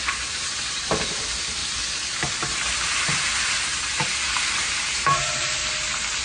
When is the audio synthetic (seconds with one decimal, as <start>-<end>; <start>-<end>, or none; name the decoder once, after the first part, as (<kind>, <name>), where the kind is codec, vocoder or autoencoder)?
0.0-1.6 (vocoder, BigVGAN v2); 4.5-5.6